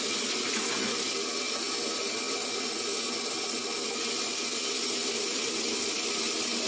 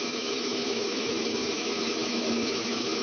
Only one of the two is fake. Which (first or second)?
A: second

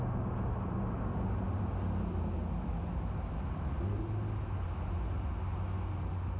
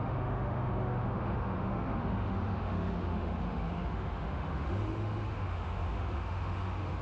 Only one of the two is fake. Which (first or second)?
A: second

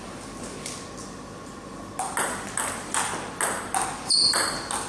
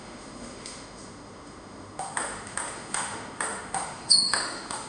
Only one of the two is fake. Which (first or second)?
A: second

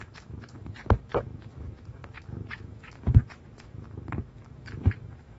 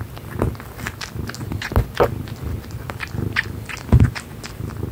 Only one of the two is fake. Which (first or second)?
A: first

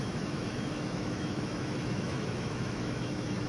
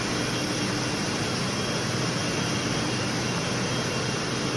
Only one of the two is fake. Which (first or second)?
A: first